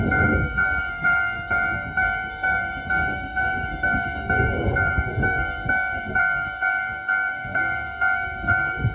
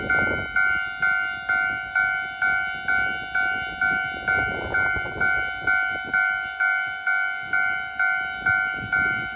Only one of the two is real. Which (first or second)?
second